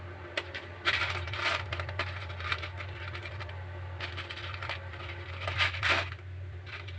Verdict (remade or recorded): recorded